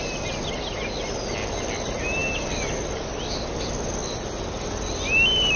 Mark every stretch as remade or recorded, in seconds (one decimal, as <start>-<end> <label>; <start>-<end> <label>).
0.0-5.6 recorded